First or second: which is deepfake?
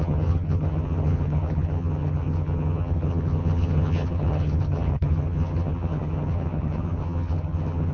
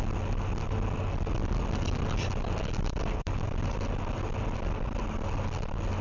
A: first